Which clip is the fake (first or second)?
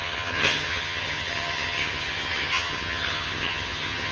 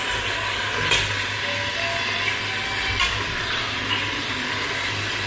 first